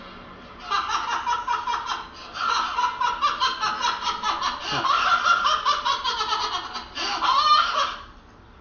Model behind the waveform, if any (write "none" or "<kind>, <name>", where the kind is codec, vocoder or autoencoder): none